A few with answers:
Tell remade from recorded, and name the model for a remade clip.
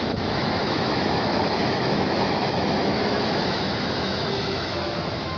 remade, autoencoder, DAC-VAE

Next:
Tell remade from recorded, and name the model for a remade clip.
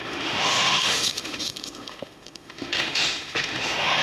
remade, autoencoder, DAC-VAE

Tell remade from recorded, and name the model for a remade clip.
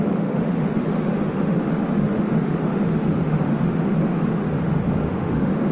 remade, autoencoder, DAC-VAE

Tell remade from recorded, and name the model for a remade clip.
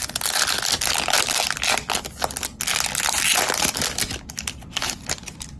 recorded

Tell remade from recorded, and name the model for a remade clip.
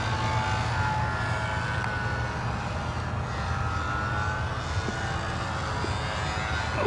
recorded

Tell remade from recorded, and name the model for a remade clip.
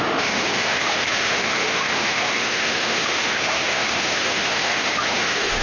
remade, autoencoder, DAC-VAE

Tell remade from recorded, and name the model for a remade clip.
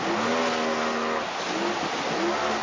recorded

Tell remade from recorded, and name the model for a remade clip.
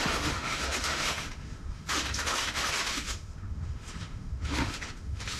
remade, autoencoder, DAC-VAE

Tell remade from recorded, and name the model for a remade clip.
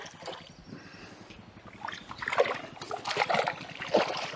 recorded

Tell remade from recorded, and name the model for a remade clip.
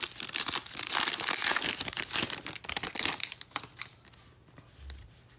recorded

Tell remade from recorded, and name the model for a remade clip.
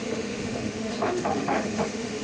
remade, autoencoder, DAC-VAE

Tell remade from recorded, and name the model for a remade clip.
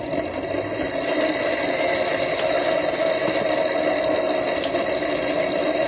recorded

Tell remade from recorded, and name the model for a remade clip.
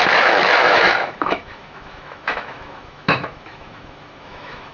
remade, autoencoder, DAC-VAE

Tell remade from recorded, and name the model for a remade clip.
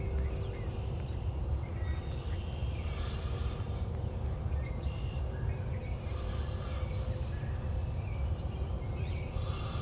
recorded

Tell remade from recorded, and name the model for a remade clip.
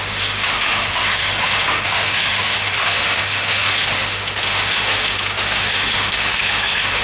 remade, autoencoder, DAC-VAE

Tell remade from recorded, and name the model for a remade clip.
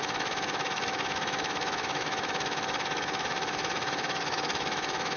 remade, autoencoder, DAC-VAE